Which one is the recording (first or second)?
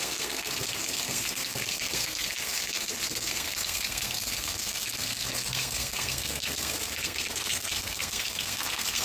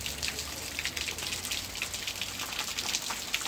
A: second